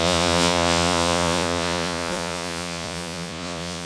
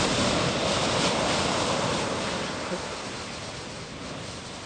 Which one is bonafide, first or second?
second